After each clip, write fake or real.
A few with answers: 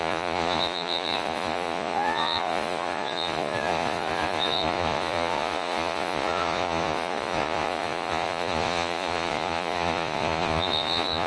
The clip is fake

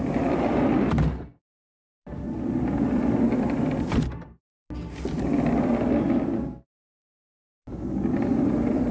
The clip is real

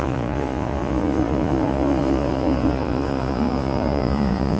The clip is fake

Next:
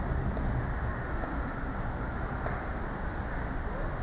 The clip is real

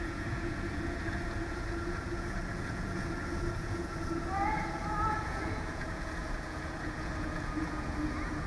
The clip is fake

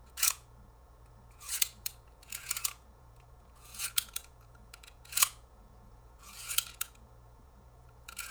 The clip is fake